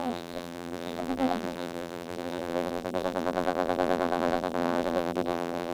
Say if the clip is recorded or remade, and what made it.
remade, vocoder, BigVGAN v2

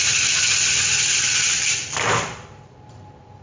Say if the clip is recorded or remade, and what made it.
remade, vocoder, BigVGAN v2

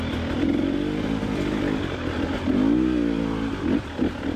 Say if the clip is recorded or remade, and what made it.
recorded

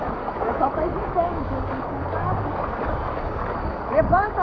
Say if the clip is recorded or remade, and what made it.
remade, codec, DAC